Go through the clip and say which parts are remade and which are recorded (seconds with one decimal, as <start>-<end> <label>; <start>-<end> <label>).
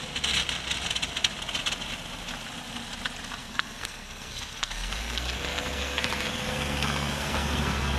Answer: 0.0-3.4 recorded; 3.4-8.0 remade